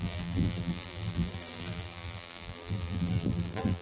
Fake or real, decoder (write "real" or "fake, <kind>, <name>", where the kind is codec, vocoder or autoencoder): fake, vocoder, BigVGAN v2